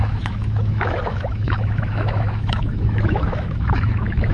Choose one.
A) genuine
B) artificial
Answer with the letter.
B